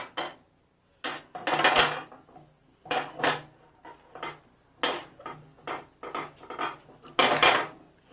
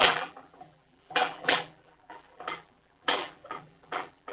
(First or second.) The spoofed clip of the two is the second